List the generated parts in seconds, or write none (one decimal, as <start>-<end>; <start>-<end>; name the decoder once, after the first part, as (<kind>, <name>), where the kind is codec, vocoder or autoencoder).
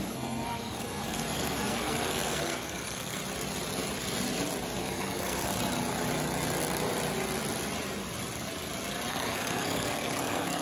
0.0-3.2 (codec, SNAC); 4.8-5.5; 9.1-10.6